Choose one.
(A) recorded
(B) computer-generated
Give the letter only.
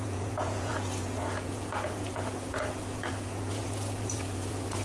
B